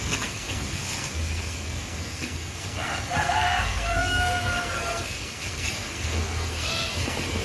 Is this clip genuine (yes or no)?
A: no